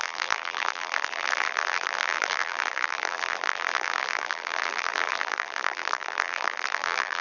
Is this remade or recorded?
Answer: remade